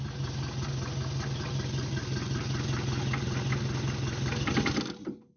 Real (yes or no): yes